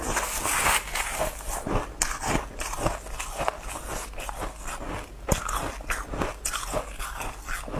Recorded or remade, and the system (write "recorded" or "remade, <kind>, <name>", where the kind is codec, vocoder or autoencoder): recorded